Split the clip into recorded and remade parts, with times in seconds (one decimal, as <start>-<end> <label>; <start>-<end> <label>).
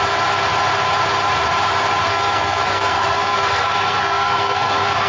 0.0-2.1 recorded; 2.1-5.1 remade